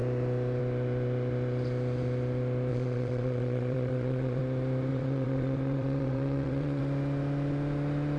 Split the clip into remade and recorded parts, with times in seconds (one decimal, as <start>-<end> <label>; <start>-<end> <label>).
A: 0.0-2.7 recorded; 2.7-4.4 remade; 4.4-4.9 recorded; 4.9-6.8 remade; 6.8-8.2 recorded

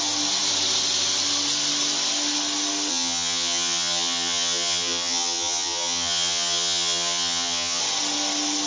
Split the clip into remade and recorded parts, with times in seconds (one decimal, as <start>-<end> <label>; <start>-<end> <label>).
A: 0.0-2.9 recorded; 2.9-7.8 remade; 7.8-8.7 recorded

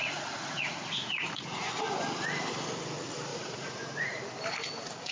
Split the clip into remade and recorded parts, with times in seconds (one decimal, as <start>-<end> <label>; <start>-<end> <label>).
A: 0.0-1.8 remade; 1.8-3.3 recorded; 3.3-4.2 remade; 4.2-5.1 recorded